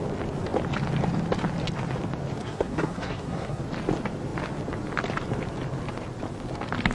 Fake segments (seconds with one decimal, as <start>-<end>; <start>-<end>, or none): 2.4-3.6